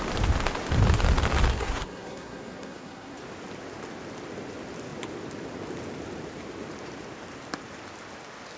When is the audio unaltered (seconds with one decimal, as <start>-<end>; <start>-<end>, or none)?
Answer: 0.0-1.5; 3.2-8.6